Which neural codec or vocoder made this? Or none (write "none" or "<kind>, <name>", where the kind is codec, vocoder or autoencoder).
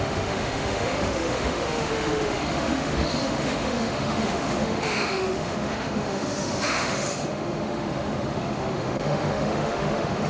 autoencoder, DAC-VAE